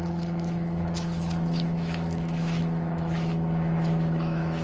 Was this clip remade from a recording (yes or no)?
yes